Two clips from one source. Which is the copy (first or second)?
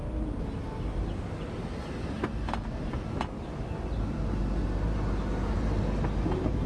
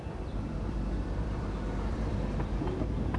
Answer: second